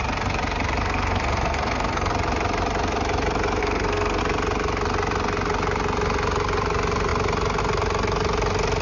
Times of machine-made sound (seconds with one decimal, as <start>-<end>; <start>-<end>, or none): 0.8-2.1; 3.6-4.2